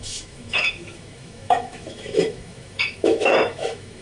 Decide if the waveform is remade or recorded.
remade